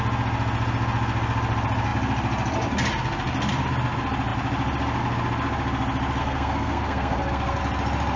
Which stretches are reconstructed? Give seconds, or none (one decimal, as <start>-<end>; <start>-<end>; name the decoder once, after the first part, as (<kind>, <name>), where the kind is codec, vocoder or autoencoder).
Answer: 6.2-7.6 (codec, SNAC)